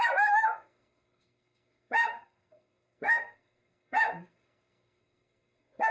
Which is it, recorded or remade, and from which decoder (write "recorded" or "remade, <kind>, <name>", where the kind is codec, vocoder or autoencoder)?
remade, codec, SNAC